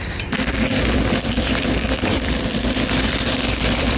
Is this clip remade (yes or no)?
yes